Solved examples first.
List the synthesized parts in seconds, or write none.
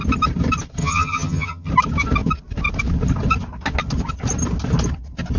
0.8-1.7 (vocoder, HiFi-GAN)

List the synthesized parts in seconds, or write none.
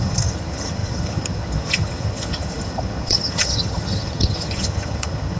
0.0-5.4 (vocoder, HiFi-GAN)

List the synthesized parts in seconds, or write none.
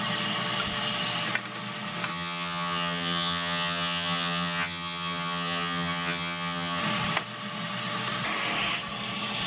2.1-6.8 (vocoder, HiFi-GAN)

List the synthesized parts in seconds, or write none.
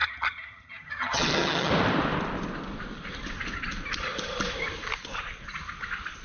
0.0-1.7 (vocoder, HiFi-GAN)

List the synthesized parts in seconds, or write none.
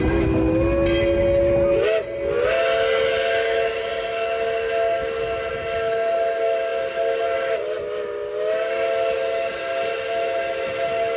none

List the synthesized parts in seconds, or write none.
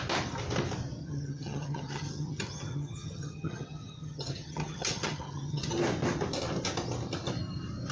1.0-5.7 (vocoder, HiFi-GAN)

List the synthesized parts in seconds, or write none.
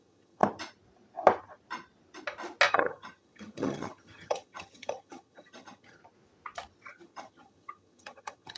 0.0-0.4 (vocoder, HiFi-GAN); 2.7-6.0; 6.9-8.6